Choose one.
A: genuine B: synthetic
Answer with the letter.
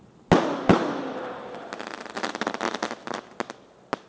A